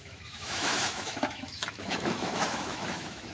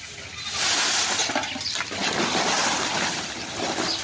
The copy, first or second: first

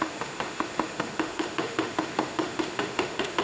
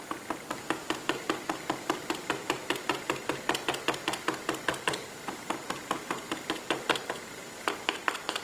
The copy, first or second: first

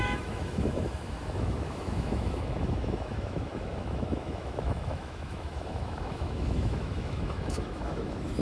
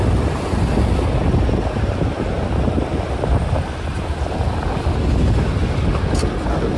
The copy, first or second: first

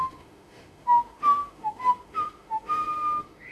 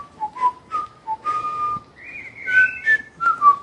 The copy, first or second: first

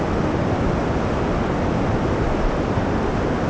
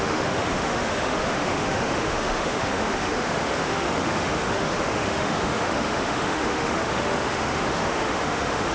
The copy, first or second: second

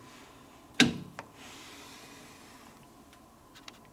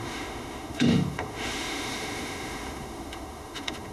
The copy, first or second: second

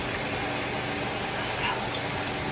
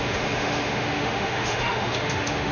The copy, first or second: second